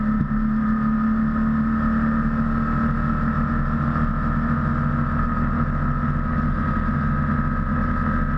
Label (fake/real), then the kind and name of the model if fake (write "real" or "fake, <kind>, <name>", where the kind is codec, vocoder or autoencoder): real